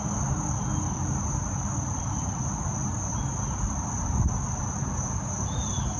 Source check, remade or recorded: recorded